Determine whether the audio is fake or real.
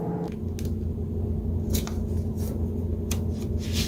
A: real